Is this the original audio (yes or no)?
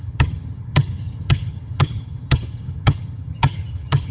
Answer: no